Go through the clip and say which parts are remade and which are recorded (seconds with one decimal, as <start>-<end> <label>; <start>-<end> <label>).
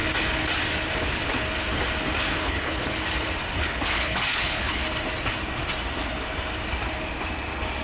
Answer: 0.0-2.4 recorded; 2.4-3.0 remade; 3.0-3.5 recorded; 3.5-4.8 remade; 4.8-7.8 recorded